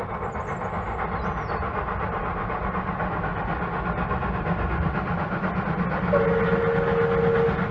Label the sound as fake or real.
real